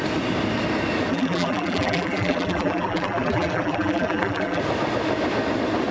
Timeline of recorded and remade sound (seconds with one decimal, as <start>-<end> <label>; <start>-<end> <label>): 0.0-1.1 recorded; 1.1-4.6 remade; 4.6-5.9 recorded